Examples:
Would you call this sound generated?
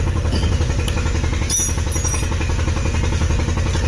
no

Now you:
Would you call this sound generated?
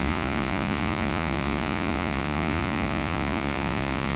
yes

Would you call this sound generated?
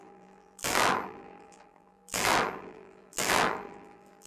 yes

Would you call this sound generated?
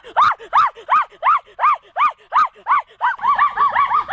no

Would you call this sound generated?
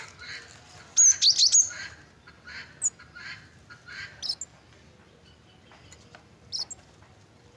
no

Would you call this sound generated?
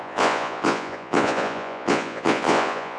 yes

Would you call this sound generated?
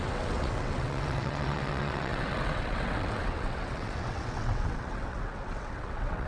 yes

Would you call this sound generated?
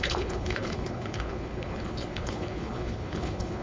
yes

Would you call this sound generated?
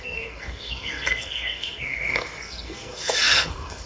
yes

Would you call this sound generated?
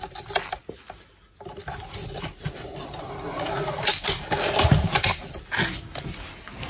no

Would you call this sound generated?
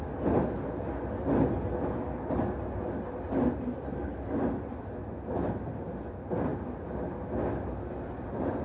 no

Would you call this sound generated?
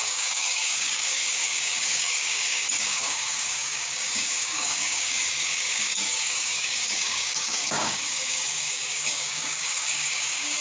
yes